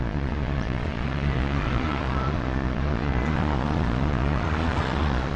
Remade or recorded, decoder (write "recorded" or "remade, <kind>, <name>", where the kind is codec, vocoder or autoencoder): remade, vocoder, Vocos